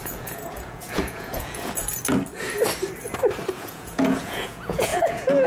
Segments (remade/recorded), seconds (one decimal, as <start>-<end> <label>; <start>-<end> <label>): 0.0-1.8 remade; 1.8-3.5 recorded; 3.5-5.5 remade